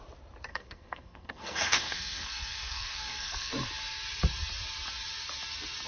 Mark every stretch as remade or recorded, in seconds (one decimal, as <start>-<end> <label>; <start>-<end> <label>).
0.0-0.5 recorded; 0.5-3.5 remade; 3.5-5.9 recorded